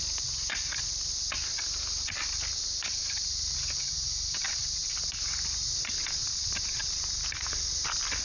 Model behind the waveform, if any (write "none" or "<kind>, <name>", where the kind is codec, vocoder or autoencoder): none